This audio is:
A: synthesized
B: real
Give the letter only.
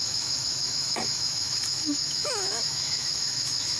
A